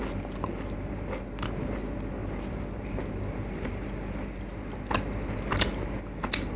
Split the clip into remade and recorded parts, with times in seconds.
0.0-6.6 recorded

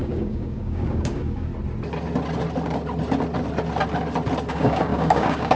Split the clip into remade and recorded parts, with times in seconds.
0.0-1.5 remade; 1.5-4.5 recorded; 4.5-5.6 remade

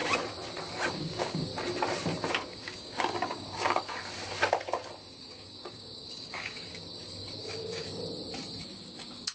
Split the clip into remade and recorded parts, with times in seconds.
0.0-0.9 recorded; 0.9-1.5 remade; 1.5-2.3 recorded; 2.3-4.0 remade; 4.0-5.2 recorded; 5.2-8.0 remade; 8.0-8.6 recorded; 8.6-9.3 remade

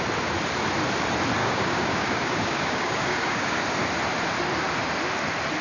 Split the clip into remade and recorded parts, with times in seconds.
0.0-1.4 recorded; 1.4-3.6 remade; 3.6-5.6 recorded

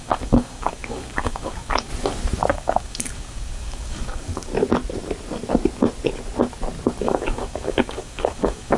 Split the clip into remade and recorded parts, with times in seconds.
0.0-1.9 remade; 1.9-2.5 recorded; 2.5-4.5 remade; 4.5-7.0 recorded; 7.0-8.8 remade

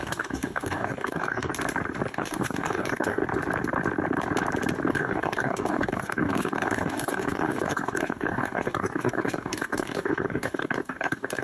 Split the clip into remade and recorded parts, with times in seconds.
0.0-1.5 remade; 1.5-2.1 recorded; 2.1-3.2 remade; 3.2-4.9 recorded; 4.9-11.4 remade